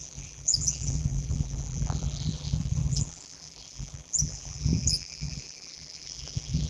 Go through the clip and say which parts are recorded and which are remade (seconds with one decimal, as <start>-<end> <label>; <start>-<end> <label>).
0.0-6.7 remade